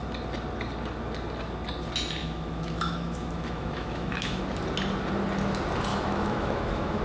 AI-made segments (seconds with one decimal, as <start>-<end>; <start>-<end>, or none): 2.2-4.4; 5.9-7.0